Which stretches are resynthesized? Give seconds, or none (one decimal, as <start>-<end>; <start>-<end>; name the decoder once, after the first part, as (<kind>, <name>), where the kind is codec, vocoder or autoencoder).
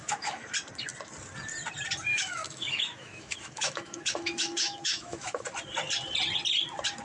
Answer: 0.0-0.5 (autoencoder, DAC-VAE); 2.1-5.4